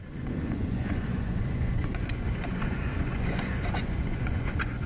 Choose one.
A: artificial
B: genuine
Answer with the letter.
A